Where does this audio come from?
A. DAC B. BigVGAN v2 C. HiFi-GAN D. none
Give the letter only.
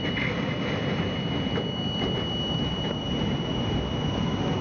D